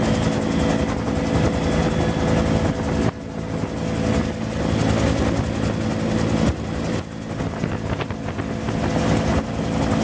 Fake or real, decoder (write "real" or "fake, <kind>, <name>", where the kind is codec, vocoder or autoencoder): real